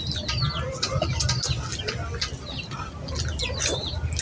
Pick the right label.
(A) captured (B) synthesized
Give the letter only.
A